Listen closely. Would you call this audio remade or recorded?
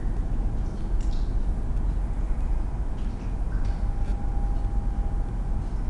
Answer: recorded